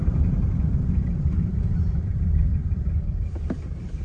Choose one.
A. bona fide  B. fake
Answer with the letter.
B